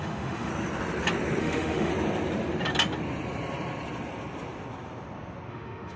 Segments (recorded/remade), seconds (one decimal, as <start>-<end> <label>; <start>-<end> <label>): 0.0-0.5 remade; 0.5-1.4 recorded; 1.4-1.9 remade; 1.9-5.5 recorded; 5.5-6.0 remade